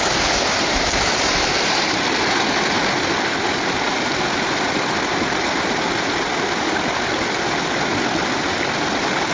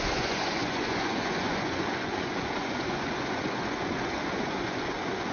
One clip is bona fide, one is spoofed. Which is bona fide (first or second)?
first